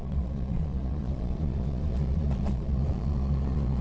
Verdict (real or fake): fake